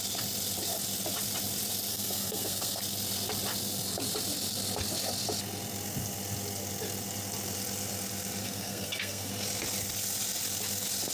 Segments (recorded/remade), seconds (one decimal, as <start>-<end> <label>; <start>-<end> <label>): 0.0-1.9 recorded; 1.9-2.8 remade; 2.8-8.4 recorded; 8.4-9.3 remade; 9.3-11.1 recorded